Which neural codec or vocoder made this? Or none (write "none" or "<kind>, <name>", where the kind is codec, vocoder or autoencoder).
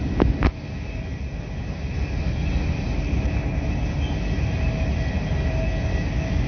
none